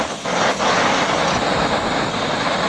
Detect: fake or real real